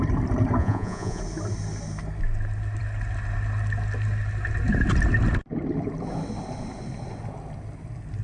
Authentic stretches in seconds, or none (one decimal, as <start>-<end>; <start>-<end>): 0.0-0.6; 1.2-8.2

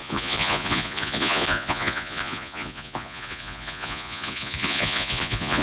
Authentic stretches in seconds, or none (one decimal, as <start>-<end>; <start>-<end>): none

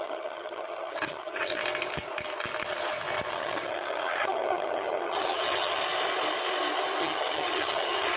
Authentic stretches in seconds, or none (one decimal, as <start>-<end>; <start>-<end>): 1.6-3.3; 5.8-7.0

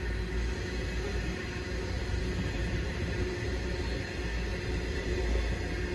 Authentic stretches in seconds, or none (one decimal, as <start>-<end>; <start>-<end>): 0.0-2.0; 3.8-4.5; 5.2-5.9

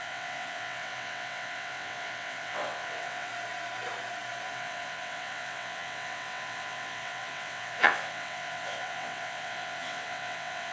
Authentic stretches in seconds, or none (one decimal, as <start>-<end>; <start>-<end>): 3.3-4.5

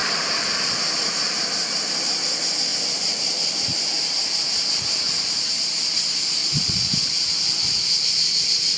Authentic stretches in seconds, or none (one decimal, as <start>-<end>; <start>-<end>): 0.0-6.4; 6.9-8.8

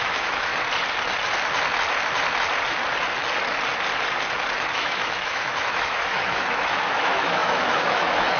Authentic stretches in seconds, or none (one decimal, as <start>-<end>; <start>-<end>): 0.5-4.7